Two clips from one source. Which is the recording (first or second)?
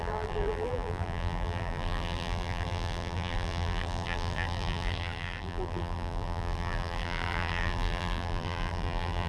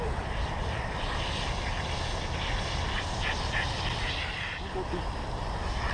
second